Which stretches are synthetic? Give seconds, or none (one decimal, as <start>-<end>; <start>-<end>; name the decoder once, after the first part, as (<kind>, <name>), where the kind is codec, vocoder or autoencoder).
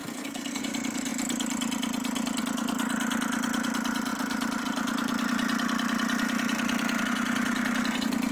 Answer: 0.0-0.6 (codec, SNAC)